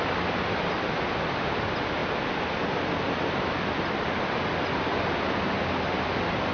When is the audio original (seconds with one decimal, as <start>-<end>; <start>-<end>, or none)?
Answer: 0.0-6.5